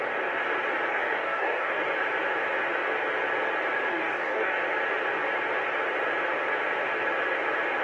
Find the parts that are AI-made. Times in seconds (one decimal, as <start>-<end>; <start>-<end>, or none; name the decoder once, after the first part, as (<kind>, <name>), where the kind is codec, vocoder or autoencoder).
0.9-1.8 (codec, DAC); 3.9-4.6

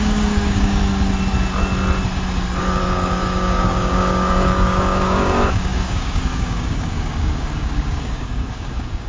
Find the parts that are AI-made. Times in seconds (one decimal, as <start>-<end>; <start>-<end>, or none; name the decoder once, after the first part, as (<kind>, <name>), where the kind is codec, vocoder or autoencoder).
0.0-0.8 (codec, DAC); 2.6-9.1

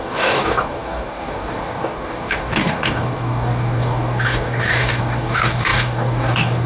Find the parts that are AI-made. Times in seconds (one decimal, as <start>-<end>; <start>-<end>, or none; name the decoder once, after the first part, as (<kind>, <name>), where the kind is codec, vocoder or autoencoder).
0.0-6.7 (codec, DAC)

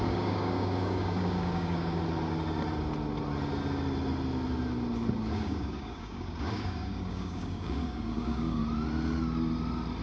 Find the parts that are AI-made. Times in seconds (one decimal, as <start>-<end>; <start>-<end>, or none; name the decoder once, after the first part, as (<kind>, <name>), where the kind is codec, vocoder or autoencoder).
0.0-2.0 (codec, DAC); 5.4-8.6

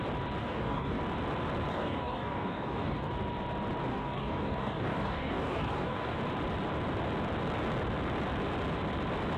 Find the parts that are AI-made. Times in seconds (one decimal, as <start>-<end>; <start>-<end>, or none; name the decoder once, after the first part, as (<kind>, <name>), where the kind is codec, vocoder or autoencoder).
0.4-1.0 (codec, DAC); 1.7-3.1; 3.9-6.2

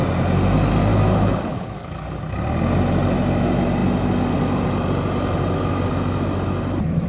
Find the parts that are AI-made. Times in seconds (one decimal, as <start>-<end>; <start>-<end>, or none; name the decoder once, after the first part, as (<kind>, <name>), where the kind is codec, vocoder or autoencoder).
0.9-2.2 (codec, DAC)

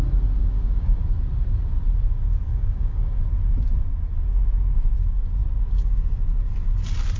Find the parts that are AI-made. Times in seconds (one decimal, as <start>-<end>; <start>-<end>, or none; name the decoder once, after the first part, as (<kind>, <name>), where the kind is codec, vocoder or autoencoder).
0.4-1.0 (codec, DAC); 2.5-3.2

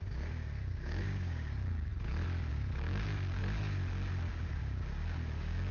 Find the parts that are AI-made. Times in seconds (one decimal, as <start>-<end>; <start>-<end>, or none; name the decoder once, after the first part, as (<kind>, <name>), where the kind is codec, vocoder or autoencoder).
0.0-1.9 (codec, DAC); 2.5-3.4; 4.3-5.7